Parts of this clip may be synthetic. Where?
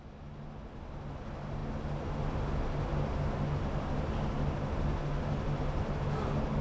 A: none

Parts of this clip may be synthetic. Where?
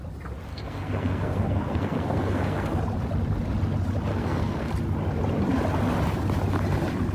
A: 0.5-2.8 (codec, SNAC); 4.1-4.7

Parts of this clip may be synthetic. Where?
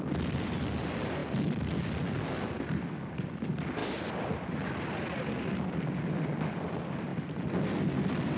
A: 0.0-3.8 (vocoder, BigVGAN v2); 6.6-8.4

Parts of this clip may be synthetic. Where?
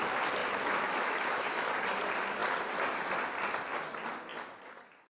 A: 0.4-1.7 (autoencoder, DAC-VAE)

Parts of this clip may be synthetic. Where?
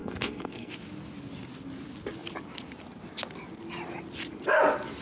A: 0.0-0.7 (codec, SNAC)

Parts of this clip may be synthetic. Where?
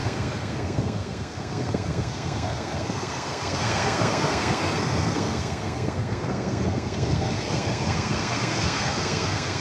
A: 0.0-9.6 (codec, SNAC)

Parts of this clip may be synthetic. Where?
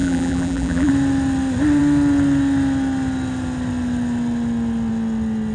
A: 0.0-0.9 (vocoder, BigVGAN v2)